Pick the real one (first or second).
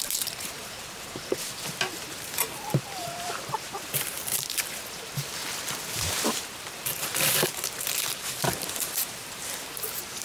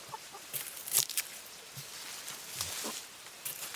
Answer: second